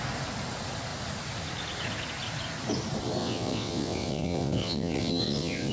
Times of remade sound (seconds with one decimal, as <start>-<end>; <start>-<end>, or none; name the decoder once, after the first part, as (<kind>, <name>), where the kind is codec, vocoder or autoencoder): 3.2-5.7 (vocoder, WaveNeXt)